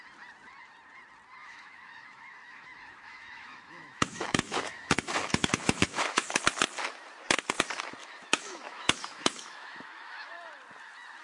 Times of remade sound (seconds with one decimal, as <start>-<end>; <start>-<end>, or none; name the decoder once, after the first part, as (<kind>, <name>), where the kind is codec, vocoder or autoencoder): 1.4-6.4 (autoencoder, DAC-VAE); 8.0-10.5